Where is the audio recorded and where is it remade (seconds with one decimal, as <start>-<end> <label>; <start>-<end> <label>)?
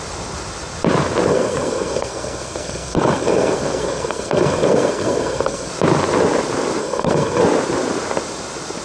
0.0-1.3 recorded; 1.3-5.7 remade; 5.7-6.8 recorded; 6.8-7.4 remade; 7.4-8.8 recorded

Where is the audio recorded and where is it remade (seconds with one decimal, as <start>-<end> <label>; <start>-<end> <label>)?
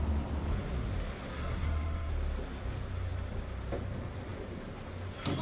0.0-1.3 recorded; 1.3-2.1 remade; 2.1-5.4 recorded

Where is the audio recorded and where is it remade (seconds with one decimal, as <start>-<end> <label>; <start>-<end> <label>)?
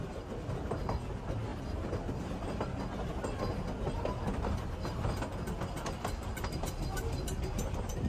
0.0-8.1 recorded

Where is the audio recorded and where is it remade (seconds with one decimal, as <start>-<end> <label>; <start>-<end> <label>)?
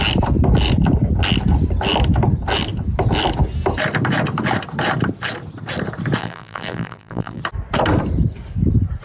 0.0-6.2 recorded; 6.2-7.4 remade; 7.4-9.0 recorded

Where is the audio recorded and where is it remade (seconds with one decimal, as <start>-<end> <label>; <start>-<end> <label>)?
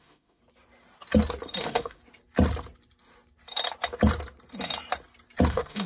0.0-0.4 remade; 0.4-1.6 recorded; 1.6-2.0 remade; 2.0-5.5 recorded; 5.5-5.9 remade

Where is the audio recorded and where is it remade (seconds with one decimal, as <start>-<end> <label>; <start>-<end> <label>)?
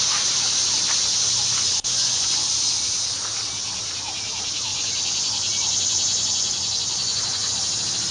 0.0-1.9 recorded; 1.9-2.5 remade; 2.5-4.7 recorded; 4.7-7.5 remade; 7.5-8.1 recorded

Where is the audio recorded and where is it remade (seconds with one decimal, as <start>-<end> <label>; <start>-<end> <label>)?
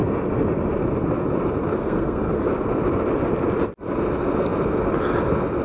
0.0-1.8 recorded; 1.8-2.5 remade; 2.5-5.6 recorded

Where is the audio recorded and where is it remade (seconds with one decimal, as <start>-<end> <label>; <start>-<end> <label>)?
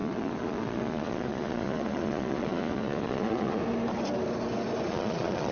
0.0-3.6 remade; 3.6-4.9 recorded; 4.9-5.5 remade